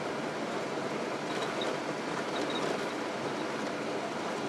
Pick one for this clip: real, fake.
real